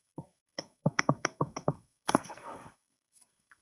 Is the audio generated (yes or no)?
yes